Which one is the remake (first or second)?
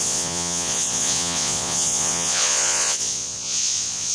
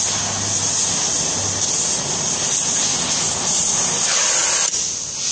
first